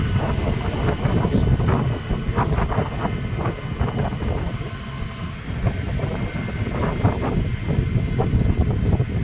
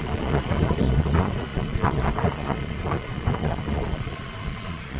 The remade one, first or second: second